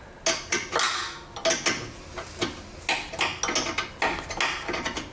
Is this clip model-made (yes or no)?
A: no